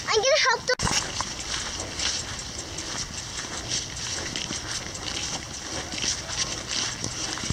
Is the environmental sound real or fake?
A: real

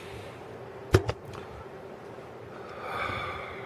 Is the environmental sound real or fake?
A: real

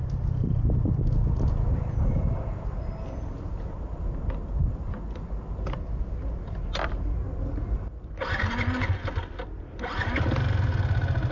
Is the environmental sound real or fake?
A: real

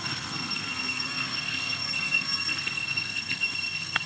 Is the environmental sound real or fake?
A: fake